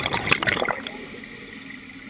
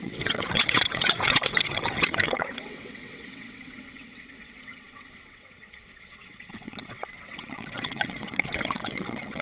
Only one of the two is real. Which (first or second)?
first